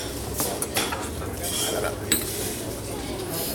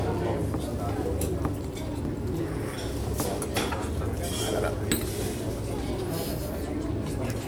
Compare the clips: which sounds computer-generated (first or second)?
first